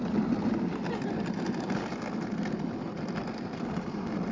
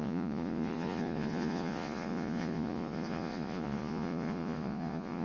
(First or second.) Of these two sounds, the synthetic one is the second